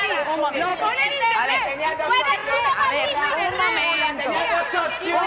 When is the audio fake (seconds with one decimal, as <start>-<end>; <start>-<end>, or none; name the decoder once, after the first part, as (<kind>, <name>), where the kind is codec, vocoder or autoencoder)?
none